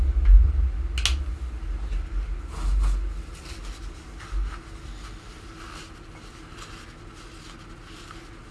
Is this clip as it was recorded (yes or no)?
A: yes